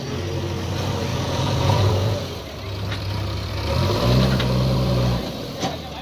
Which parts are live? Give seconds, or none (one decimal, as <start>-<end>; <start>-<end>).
0.0-1.1; 2.4-6.0